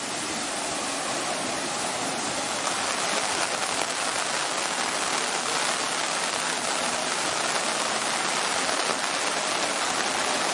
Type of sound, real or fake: real